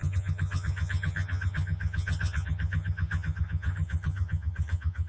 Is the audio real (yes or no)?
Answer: no